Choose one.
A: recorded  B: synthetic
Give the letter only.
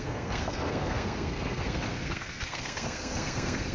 B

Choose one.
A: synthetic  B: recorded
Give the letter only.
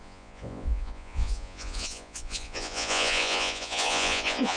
A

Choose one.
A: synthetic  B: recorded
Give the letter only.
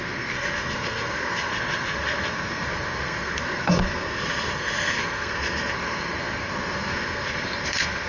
A